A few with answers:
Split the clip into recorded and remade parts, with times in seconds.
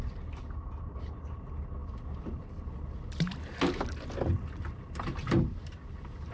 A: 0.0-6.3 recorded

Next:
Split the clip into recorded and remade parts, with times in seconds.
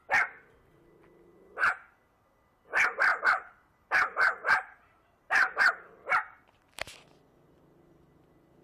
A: 0.0-3.1 recorded; 3.1-5.7 remade; 5.7-8.6 recorded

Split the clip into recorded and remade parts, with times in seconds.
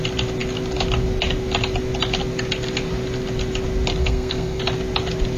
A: 0.0-4.0 recorded; 4.0-4.6 remade; 4.6-5.4 recorded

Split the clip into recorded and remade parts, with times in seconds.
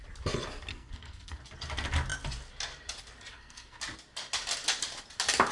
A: 0.0-0.7 recorded; 0.7-1.4 remade; 1.4-3.3 recorded; 3.3-3.8 remade; 3.8-5.5 recorded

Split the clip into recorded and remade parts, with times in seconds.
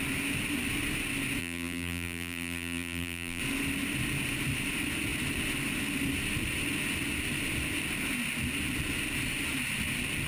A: 0.0-1.4 recorded; 1.4-3.4 remade; 3.4-10.3 recorded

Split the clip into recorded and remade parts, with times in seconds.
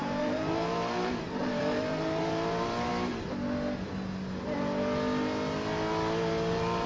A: 0.0-2.9 remade; 2.9-6.5 recorded; 6.5-6.9 remade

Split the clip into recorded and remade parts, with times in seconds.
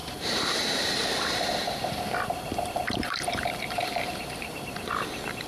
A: 0.0-2.0 remade; 2.0-2.8 recorded; 2.8-4.8 remade; 4.8-5.5 recorded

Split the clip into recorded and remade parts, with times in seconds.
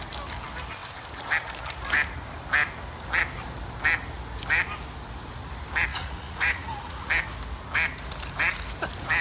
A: 0.0-5.9 recorded; 5.9-7.1 remade; 7.1-9.2 recorded